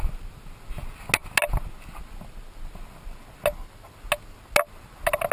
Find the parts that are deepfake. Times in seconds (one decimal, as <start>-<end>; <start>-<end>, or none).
none